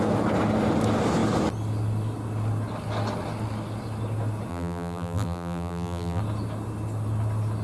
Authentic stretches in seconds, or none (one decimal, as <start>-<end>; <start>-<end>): 0.0-4.5; 6.2-7.6